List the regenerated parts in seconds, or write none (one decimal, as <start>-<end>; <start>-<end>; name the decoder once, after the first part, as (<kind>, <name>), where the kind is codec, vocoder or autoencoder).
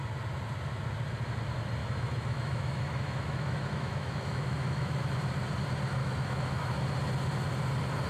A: 1.8-5.0 (autoencoder, DAC-VAE); 6.0-6.7